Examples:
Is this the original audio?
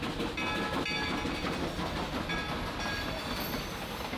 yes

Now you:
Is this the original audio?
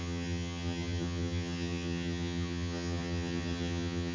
no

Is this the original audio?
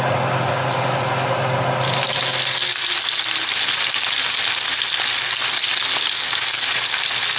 yes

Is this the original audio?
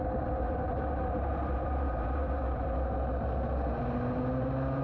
yes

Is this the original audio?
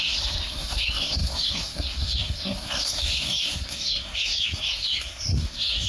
no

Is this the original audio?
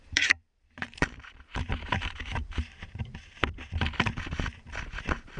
no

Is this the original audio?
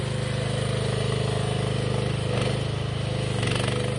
yes